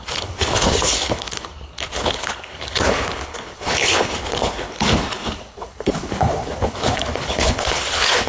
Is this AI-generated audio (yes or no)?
yes